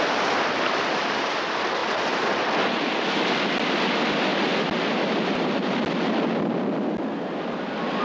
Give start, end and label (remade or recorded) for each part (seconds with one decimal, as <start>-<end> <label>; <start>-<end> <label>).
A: 0.0-8.0 recorded